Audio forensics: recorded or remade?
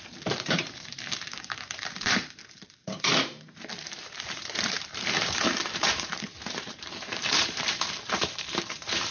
remade